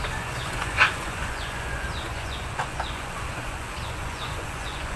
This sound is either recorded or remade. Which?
remade